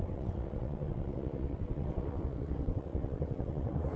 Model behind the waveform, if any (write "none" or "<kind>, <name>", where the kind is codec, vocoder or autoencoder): vocoder, WaveNeXt